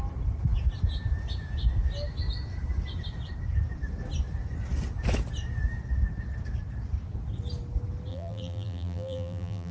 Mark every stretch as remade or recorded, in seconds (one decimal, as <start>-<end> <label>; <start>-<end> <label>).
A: 0.0-8.1 recorded; 8.1-9.7 remade